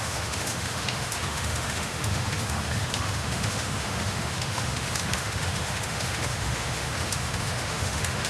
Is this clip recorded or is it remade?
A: remade